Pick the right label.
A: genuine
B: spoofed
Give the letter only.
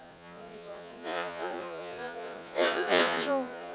B